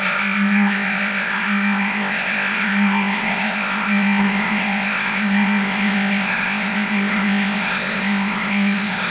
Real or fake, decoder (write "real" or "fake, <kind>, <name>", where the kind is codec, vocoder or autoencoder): fake, codec, ZipCodec